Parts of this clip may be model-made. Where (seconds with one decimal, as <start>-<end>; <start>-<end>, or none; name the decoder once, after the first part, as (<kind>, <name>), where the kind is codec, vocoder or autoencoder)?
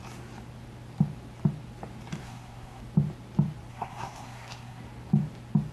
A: 2.2-2.8 (codec, SNAC); 3.7-4.8